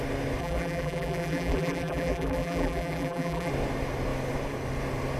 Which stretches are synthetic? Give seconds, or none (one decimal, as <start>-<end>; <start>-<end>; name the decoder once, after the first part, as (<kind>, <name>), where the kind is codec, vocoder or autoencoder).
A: 0.4-3.5 (vocoder, BigVGAN v2)